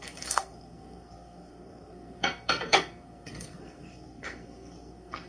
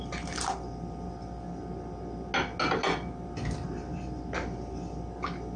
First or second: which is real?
second